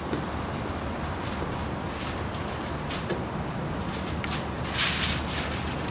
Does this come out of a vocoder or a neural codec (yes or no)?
no